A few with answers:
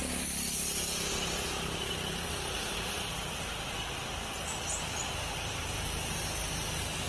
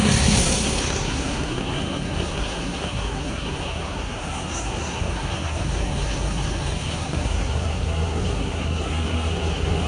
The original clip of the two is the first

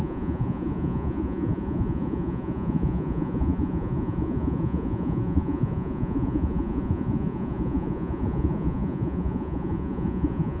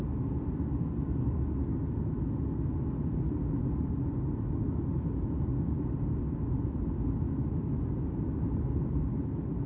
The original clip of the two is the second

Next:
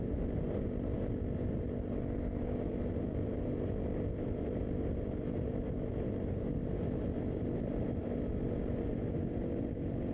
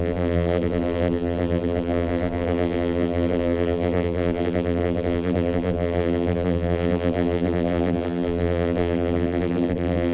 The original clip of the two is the first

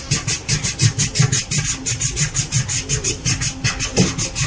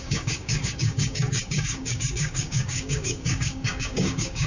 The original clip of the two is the first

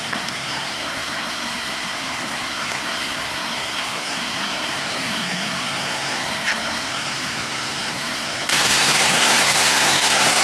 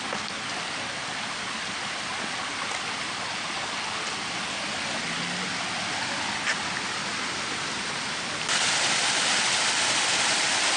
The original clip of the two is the second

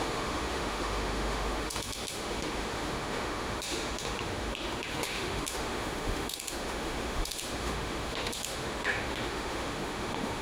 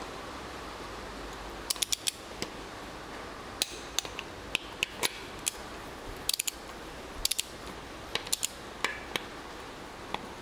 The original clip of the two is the second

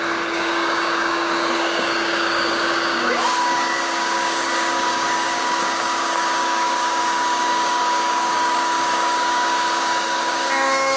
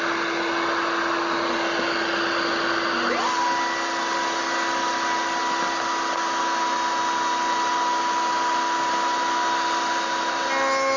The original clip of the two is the second